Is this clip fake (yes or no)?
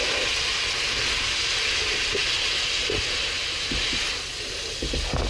no